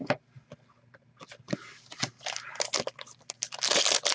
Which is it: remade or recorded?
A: recorded